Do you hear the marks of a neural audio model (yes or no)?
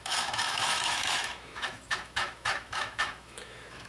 yes